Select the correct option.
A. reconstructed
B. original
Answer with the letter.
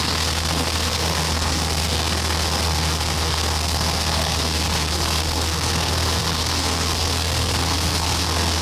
A